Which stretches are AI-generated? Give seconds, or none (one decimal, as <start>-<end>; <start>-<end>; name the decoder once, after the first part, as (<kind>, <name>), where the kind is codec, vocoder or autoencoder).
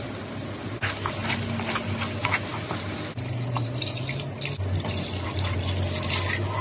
none